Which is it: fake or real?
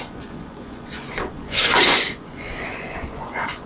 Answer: fake